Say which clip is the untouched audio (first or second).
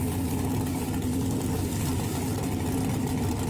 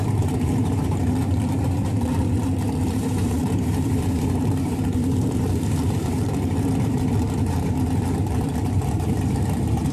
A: first